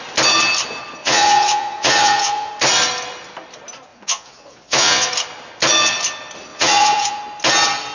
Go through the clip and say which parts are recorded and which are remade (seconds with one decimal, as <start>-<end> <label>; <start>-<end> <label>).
0.0-1.0 recorded; 1.0-2.5 remade; 2.5-3.9 recorded; 3.9-5.1 remade; 5.1-6.5 recorded; 6.5-7.2 remade; 7.2-7.9 recorded